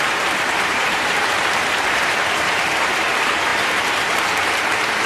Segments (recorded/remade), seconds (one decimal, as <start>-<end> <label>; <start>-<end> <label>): 0.0-5.1 remade